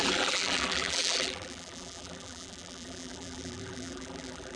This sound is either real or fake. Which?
fake